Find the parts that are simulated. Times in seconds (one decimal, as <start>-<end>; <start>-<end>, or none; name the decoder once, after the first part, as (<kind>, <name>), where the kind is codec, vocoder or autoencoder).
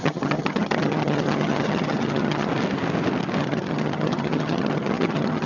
0.0-2.5 (vocoder, HiFi-GAN); 3.4-5.5